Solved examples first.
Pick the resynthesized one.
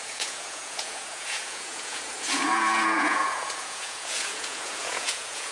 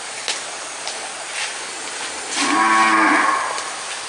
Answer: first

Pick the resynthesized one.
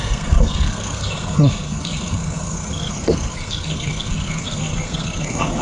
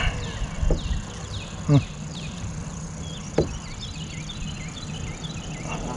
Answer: first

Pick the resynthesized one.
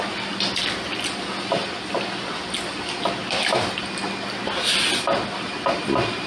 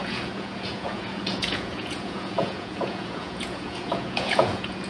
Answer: second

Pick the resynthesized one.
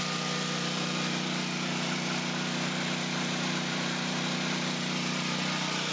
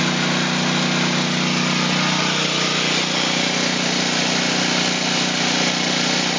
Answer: first